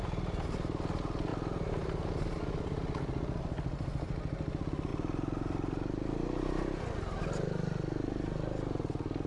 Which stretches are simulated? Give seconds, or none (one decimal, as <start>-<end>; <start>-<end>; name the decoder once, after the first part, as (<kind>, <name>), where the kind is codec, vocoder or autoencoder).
none